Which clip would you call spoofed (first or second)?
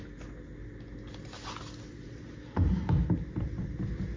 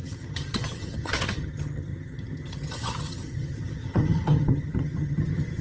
second